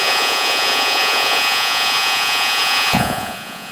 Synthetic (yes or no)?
yes